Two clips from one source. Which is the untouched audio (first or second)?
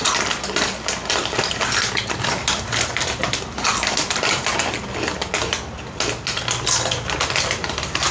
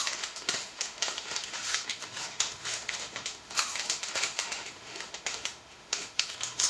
first